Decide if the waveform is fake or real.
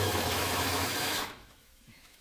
fake